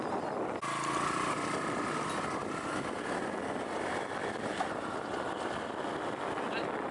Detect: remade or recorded recorded